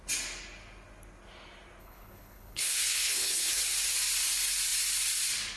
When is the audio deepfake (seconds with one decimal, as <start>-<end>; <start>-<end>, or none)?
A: 1.8-3.6